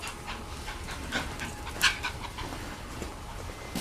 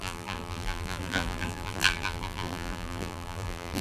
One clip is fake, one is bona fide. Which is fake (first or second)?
second